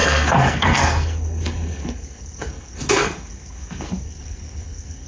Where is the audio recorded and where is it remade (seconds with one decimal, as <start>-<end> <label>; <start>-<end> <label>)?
0.0-5.1 remade